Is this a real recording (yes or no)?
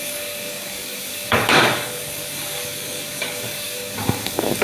no